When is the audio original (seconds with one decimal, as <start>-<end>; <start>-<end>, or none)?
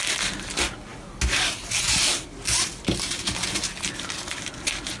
0.0-5.0